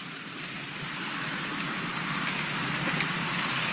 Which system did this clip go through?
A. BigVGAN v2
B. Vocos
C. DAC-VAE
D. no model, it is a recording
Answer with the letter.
D